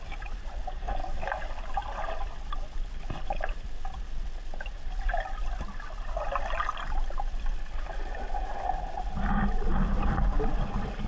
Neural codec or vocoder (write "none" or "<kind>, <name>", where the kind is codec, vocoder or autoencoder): none